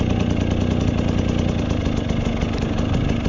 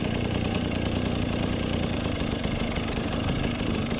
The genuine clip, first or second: first